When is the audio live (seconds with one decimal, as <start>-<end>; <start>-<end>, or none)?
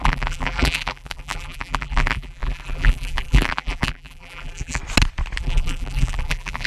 4.8-5.4